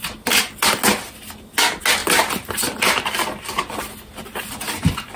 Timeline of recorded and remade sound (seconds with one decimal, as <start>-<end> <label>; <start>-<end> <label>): 0.0-5.2 recorded